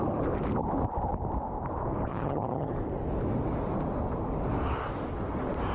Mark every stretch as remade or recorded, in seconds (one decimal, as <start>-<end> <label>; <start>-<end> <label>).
0.0-2.1 recorded; 2.1-2.7 remade; 2.7-5.7 recorded